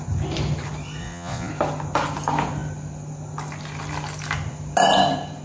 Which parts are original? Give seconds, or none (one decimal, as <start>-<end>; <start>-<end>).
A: 0.0-1.0; 1.5-5.4